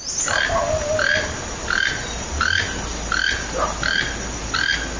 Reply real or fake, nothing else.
real